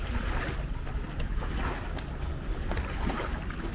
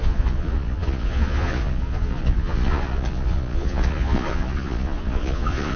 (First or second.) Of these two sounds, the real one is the first